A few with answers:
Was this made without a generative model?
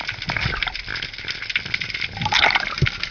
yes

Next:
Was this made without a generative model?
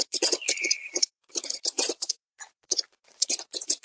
no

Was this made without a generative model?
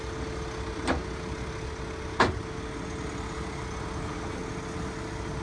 yes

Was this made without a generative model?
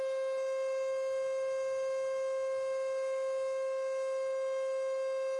yes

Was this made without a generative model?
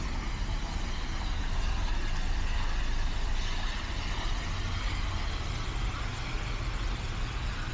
yes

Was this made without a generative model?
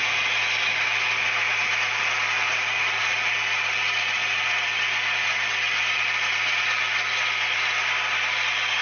yes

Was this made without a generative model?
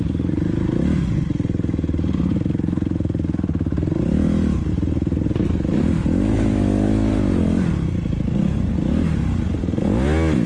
yes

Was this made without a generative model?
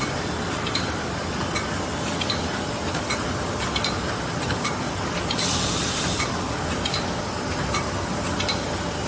yes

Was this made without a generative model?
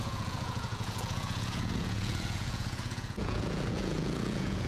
no